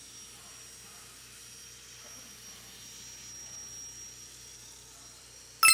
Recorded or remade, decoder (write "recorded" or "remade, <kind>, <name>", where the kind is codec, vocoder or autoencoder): recorded